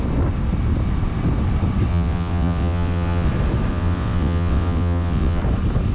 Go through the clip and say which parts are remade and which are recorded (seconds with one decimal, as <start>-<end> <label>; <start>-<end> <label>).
0.0-1.9 recorded; 1.9-3.3 remade; 3.3-3.7 recorded; 3.7-5.4 remade; 5.4-5.9 recorded